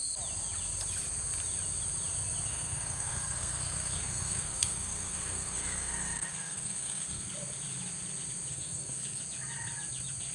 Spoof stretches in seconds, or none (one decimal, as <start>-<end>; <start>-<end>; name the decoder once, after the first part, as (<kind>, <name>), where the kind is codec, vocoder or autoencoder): 2.5-7.3 (codec, SNAC); 8.5-9.2